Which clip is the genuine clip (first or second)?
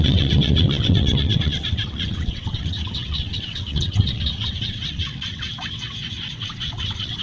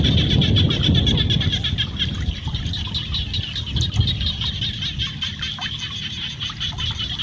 second